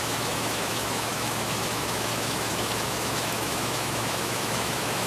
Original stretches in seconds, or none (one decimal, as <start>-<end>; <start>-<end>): none